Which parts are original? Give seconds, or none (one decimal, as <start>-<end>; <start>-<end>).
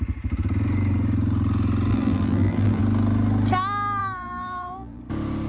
0.0-1.9; 2.8-4.0; 5.0-5.5